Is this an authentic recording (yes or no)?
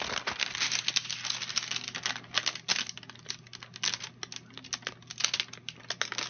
yes